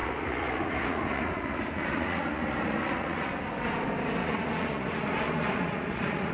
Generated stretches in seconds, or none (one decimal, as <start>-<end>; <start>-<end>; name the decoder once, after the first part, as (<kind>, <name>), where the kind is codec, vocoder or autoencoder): 0.0-3.4 (vocoder, Vocos); 4.2-6.3